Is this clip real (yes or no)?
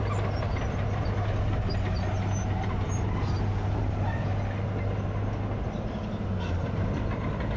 yes